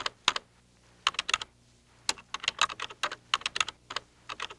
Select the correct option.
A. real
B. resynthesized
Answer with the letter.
A